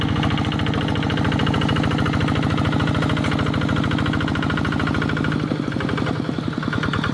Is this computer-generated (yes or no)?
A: no